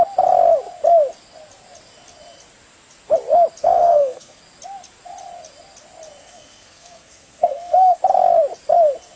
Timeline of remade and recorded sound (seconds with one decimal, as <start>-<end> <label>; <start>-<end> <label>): 0.0-3.6 recorded; 3.6-4.4 remade; 4.4-6.2 recorded; 6.2-8.0 remade; 8.0-9.2 recorded